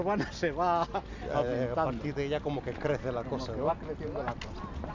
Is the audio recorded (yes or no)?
yes